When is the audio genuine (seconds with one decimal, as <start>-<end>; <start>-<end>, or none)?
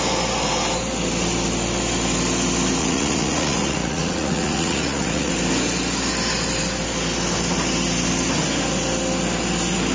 0.0-2.8; 5.3-9.9